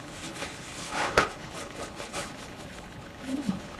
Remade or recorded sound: remade